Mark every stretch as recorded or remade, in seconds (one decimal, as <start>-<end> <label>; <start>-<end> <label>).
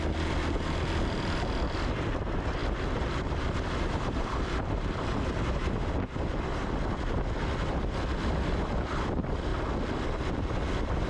0.0-2.6 remade; 2.6-3.3 recorded; 3.3-5.1 remade; 5.1-7.8 recorded; 7.8-9.5 remade; 9.5-10.3 recorded; 10.3-11.1 remade